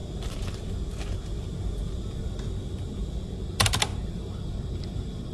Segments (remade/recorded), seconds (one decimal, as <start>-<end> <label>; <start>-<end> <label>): 0.0-5.3 recorded